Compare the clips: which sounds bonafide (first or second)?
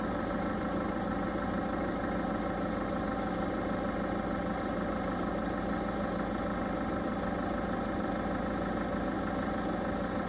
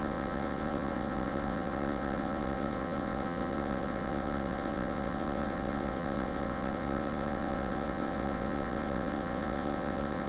first